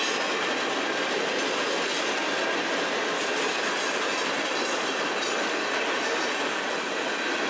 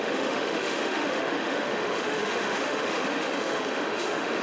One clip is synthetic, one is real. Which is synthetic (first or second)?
second